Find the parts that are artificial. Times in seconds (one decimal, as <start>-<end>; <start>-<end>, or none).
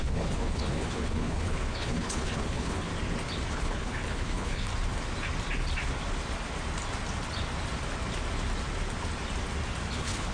0.0-2.9; 3.5-4.7; 9.9-10.3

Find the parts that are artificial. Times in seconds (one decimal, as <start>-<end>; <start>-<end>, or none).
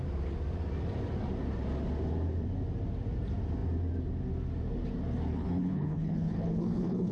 5.3-7.1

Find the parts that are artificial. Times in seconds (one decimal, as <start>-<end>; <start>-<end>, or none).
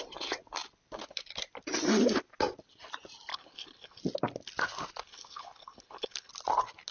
3.3-4.0; 5.0-6.3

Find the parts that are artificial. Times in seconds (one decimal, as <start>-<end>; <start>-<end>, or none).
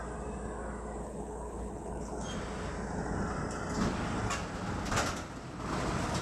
1.0-2.2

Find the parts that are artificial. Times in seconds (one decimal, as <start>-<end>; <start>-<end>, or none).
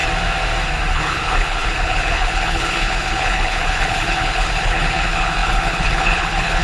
0.9-6.6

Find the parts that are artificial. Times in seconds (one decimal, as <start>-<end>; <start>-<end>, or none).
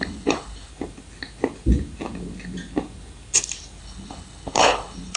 0.0-0.7; 3.8-5.2